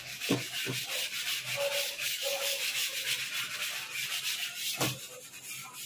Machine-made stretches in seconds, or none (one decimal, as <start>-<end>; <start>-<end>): 0.0-0.6; 1.9-2.9